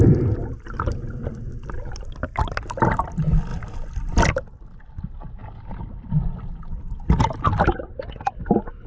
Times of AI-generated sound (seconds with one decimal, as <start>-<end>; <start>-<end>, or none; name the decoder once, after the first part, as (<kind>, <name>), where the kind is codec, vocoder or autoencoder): none

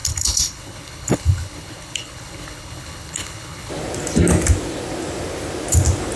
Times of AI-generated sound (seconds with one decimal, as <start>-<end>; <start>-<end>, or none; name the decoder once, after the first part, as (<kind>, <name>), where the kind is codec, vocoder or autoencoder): 0.0-3.7 (codec, HILCodec)

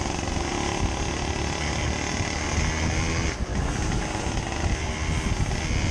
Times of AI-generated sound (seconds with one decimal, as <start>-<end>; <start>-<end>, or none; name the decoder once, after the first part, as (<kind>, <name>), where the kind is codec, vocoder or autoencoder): none

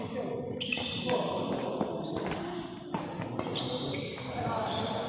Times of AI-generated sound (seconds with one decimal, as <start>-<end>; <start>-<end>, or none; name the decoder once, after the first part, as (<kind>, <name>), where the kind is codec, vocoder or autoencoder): none

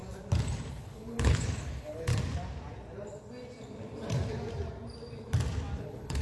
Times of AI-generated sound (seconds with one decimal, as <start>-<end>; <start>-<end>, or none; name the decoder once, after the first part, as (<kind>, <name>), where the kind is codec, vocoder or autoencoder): 0.7-2.1 (codec, HILCodec); 5.8-6.2

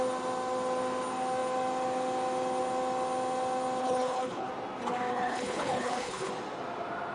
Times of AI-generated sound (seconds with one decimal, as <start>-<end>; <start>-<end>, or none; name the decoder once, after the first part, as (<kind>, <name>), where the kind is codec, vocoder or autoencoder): 3.8-4.5 (codec, HILCodec); 5.1-6.3

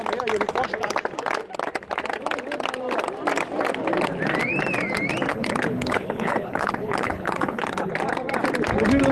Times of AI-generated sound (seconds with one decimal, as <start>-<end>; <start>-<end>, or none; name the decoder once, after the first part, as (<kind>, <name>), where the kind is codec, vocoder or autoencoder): 5.3-7.9 (codec, HILCodec)

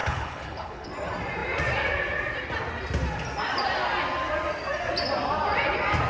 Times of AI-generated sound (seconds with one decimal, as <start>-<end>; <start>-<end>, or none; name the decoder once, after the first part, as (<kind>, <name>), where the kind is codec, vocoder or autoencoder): 0.0-0.9 (codec, HILCodec)